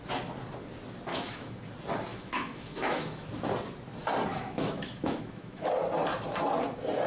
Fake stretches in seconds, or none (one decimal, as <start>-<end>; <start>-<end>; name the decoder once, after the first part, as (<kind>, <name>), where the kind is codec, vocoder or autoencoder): 1.1-1.6 (autoencoder, DAC-VAE); 2.1-3.3; 4.3-5.7